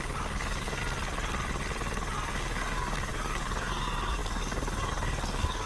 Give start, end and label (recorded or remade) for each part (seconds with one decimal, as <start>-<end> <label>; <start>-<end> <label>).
0.0-0.8 remade; 0.8-2.3 recorded; 2.3-5.7 remade